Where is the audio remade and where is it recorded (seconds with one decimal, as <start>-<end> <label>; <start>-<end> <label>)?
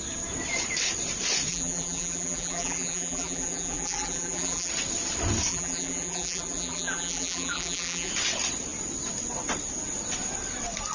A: 0.0-1.5 recorded; 1.5-4.7 remade; 4.7-5.5 recorded; 5.5-8.1 remade; 8.1-10.9 recorded